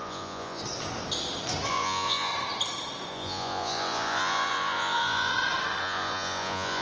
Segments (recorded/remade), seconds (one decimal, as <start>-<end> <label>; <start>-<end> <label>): 0.0-0.6 remade; 0.6-1.7 recorded; 1.7-2.3 remade; 2.3-3.1 recorded; 3.1-5.3 remade; 5.3-5.8 recorded; 5.8-6.8 remade